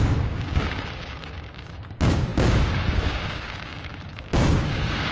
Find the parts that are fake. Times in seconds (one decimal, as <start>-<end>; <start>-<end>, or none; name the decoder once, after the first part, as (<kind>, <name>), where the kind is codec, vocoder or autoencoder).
0.0-5.1 (codec, DAC)